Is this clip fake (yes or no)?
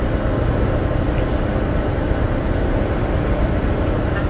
no